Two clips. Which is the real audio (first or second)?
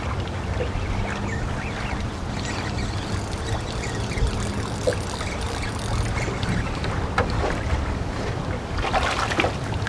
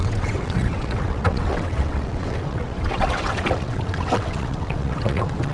first